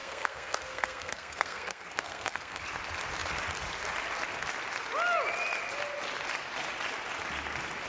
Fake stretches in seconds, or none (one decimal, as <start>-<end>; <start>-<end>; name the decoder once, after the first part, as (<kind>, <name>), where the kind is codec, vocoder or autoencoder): 0.0-2.6 (codec, SNAC)